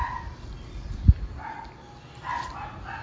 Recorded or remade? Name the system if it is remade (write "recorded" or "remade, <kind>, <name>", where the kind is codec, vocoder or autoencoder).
recorded